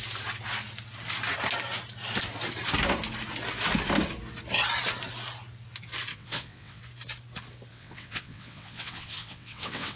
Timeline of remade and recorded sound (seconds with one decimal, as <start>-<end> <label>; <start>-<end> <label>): 0.0-6.1 recorded; 6.1-6.8 remade; 6.8-7.7 recorded; 7.7-10.0 remade